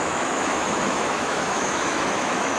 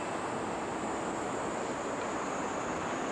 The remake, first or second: first